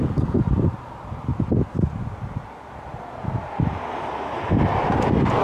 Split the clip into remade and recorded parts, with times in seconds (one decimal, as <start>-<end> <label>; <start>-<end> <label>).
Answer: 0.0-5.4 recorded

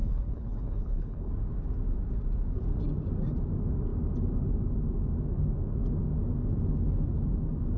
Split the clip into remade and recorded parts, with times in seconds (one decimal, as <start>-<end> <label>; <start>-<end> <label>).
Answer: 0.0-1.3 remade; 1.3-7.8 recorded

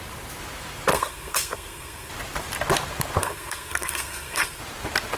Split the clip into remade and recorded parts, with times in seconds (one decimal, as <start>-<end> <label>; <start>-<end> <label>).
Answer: 0.0-0.9 recorded; 0.9-2.1 remade; 2.1-3.2 recorded; 3.2-4.6 remade; 4.6-5.2 recorded

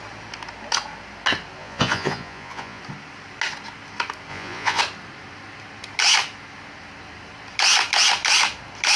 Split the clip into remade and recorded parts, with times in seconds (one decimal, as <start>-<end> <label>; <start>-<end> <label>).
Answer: 0.0-1.6 recorded; 1.6-2.8 remade; 2.8-4.3 recorded; 4.3-4.8 remade; 4.8-9.0 recorded